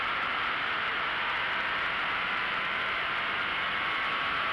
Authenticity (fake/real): fake